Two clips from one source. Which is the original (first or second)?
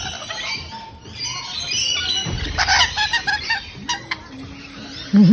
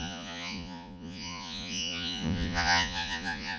first